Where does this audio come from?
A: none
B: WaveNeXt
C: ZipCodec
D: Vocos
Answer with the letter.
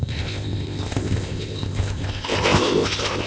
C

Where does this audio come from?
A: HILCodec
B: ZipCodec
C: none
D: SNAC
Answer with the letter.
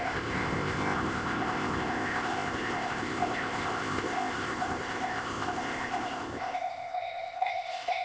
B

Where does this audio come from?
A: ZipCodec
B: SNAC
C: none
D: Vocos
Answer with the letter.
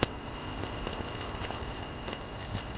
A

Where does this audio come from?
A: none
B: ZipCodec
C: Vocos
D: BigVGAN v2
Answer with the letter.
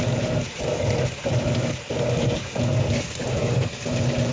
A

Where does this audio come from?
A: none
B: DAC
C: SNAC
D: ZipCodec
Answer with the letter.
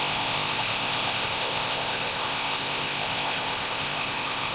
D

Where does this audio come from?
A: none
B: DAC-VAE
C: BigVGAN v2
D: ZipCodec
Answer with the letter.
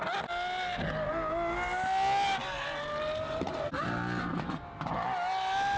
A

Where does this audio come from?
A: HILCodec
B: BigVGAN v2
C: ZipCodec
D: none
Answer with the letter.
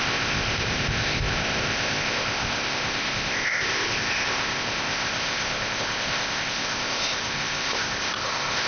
C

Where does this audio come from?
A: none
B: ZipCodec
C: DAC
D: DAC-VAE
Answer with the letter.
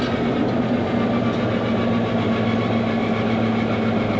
A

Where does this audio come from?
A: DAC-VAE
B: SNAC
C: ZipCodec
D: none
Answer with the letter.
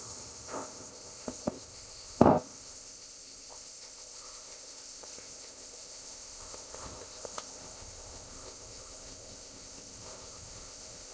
C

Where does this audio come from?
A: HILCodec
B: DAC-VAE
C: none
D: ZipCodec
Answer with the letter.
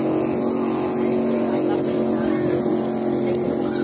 C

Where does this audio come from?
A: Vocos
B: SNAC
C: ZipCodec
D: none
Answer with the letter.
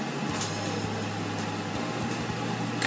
D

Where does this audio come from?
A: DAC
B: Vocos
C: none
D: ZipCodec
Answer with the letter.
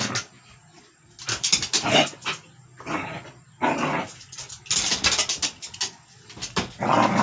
C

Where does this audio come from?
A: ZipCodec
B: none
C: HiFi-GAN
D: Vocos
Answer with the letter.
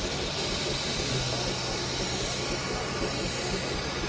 B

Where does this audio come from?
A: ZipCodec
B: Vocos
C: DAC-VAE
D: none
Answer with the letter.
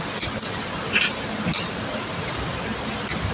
D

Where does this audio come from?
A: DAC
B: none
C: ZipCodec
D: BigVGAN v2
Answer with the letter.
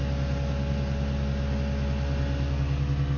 B